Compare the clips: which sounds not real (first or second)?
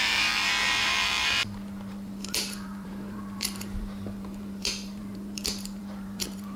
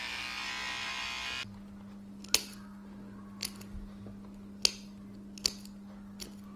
first